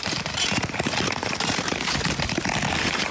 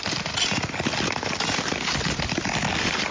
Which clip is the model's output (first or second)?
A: first